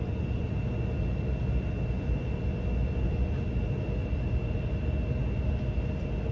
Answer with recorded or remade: recorded